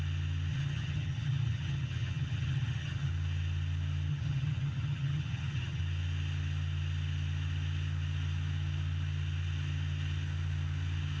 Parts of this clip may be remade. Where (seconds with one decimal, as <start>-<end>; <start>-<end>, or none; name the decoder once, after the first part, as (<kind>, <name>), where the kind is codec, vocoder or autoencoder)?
0.5-3.1 (vocoder, HiFi-GAN); 4.1-5.8